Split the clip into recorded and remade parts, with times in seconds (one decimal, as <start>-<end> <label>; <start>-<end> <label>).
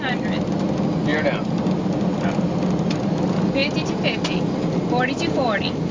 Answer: 0.0-5.9 recorded